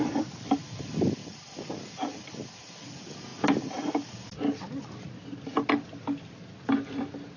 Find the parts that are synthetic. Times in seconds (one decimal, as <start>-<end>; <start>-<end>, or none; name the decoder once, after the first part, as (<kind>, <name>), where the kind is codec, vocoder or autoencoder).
none